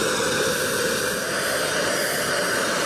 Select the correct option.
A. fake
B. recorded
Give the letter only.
B